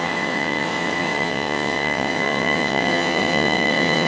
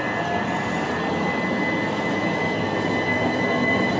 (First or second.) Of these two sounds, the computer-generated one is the first